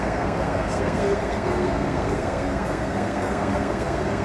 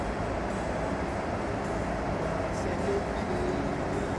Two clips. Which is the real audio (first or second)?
second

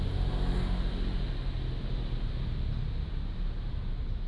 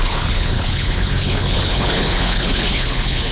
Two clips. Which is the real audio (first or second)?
first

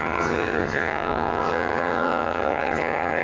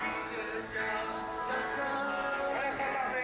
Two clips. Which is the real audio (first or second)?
second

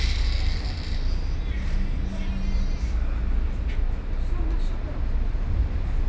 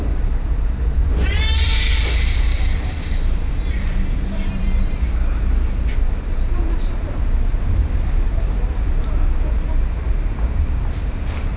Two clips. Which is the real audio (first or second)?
first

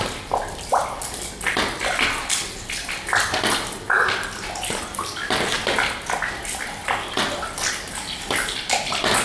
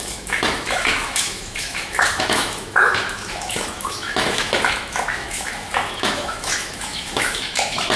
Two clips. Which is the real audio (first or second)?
first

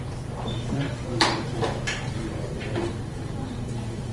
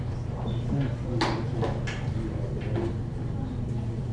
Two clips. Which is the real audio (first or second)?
second